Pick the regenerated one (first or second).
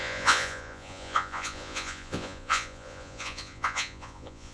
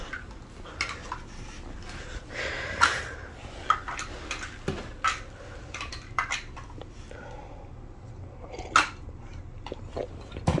first